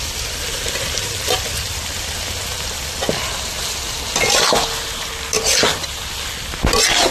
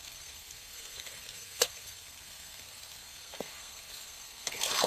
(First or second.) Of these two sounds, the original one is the first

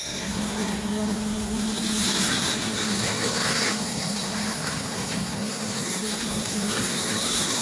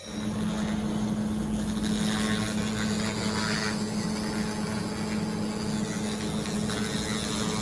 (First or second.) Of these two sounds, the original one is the second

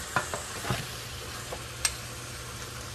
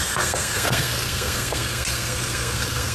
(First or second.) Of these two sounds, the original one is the first